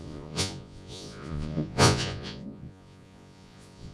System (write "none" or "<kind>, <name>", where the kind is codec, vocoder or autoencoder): vocoder, Vocos